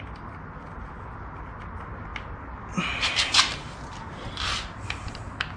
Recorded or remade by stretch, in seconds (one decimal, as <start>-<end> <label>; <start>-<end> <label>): 0.0-5.6 recorded

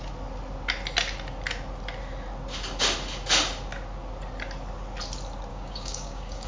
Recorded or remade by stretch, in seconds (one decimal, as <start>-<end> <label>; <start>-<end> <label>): 0.0-5.5 recorded; 5.5-6.5 remade